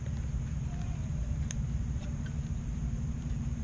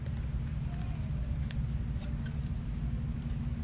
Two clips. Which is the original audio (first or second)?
second